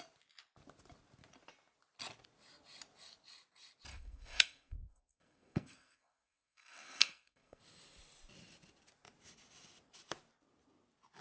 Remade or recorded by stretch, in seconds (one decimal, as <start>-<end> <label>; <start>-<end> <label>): 0.0-3.9 recorded; 3.9-7.6 remade; 7.6-11.2 recorded